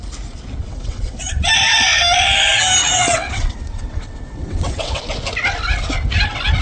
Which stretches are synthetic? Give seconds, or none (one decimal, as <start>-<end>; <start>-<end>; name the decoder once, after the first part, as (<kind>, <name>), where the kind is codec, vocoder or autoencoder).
0.6-1.5 (vocoder, WaveNeXt); 2.8-5.0